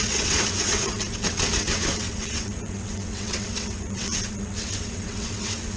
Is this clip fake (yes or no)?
yes